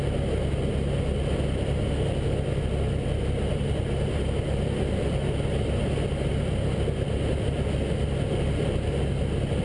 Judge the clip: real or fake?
real